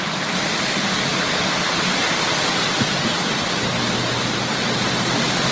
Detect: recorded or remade recorded